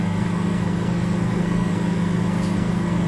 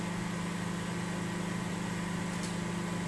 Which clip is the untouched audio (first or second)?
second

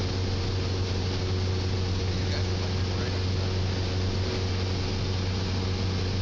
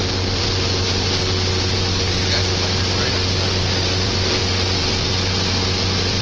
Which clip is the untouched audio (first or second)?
first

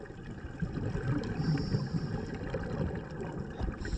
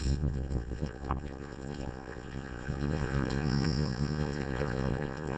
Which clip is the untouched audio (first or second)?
first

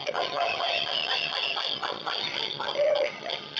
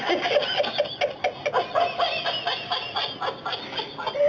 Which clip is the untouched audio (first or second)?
second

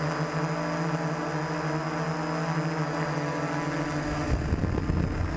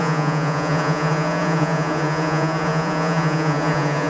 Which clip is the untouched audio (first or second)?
first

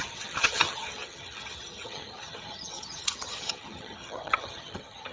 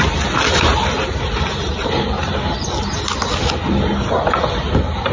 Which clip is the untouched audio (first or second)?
second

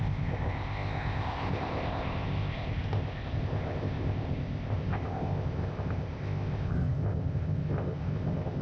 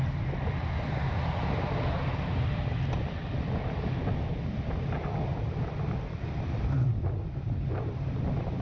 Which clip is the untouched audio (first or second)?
second